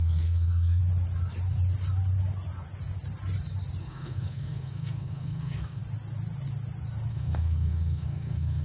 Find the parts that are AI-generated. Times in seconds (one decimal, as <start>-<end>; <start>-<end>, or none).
0.0-0.8; 3.8-5.8; 7.1-8.6